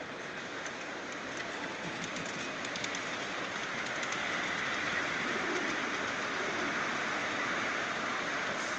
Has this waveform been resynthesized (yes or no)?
no